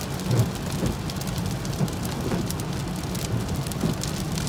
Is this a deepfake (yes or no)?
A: no